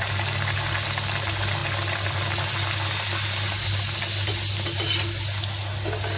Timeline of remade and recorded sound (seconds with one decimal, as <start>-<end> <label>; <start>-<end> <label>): 0.0-6.2 recorded